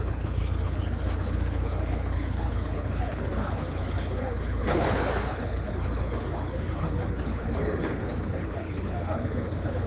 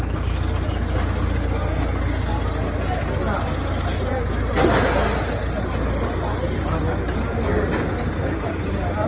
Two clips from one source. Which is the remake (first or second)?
first